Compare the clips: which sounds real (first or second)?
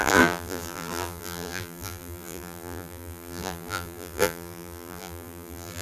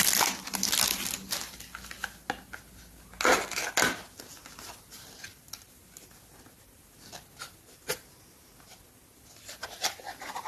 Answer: second